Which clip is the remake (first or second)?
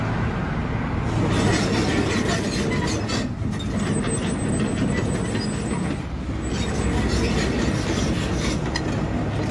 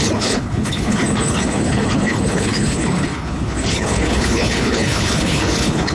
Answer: second